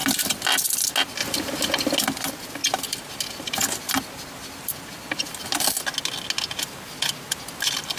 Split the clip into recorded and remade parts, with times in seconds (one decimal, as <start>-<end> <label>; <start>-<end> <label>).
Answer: 0.0-8.0 recorded